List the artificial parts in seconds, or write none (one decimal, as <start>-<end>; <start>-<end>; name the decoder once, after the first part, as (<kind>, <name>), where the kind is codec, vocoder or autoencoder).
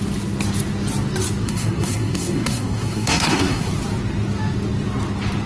1.4-3.7 (codec, SNAC)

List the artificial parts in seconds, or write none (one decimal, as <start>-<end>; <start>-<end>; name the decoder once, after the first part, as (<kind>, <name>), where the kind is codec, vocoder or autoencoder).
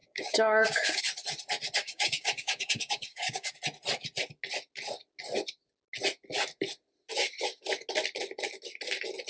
0.0-1.0 (codec, DAC); 1.8-3.5